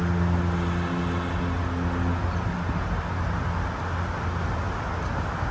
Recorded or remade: recorded